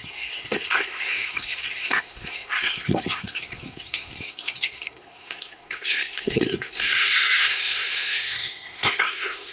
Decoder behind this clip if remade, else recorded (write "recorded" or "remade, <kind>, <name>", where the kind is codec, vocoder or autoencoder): remade, codec, SNAC